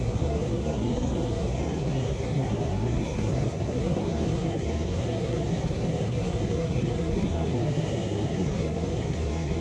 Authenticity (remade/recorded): remade